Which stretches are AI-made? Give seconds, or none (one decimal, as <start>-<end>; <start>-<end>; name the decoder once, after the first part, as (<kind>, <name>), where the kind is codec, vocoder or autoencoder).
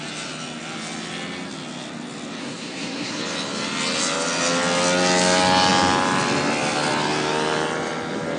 2.4-3.2 (codec, SNAC)